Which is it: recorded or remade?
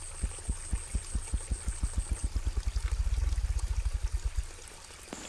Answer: recorded